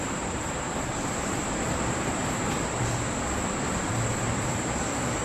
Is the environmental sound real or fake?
fake